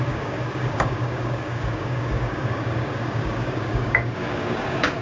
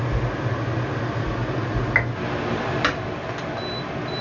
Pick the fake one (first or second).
first